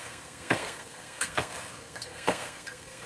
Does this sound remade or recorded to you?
remade